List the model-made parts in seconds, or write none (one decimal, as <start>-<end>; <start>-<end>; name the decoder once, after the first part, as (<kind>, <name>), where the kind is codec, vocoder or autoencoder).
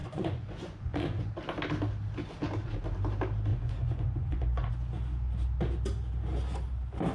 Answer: 0.0-1.3 (vocoder, Vocos); 3.5-4.7